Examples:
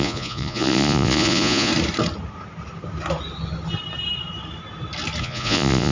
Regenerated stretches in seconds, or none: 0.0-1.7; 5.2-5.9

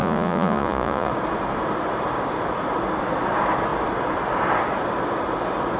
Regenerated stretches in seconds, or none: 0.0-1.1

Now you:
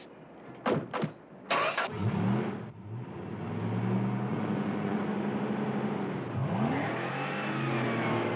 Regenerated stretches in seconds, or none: 4.3-5.0

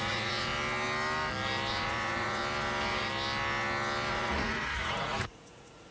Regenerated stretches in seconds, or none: 0.0-0.5; 1.7-2.4; 4.1-5.9

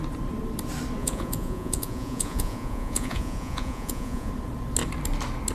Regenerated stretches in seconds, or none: 1.0-4.3

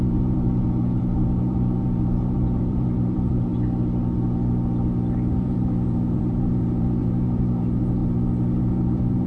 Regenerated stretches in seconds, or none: 0.0-3.5; 5.3-8.0; 8.6-9.3

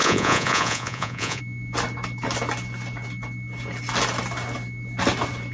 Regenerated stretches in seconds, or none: 0.0-1.4